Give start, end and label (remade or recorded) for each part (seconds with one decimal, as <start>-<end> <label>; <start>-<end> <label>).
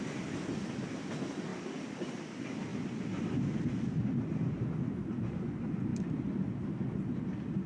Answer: 0.0-1.5 recorded; 1.5-2.1 remade; 2.1-2.7 recorded; 2.7-3.6 remade; 3.6-5.9 recorded; 5.9-6.5 remade; 6.5-7.7 recorded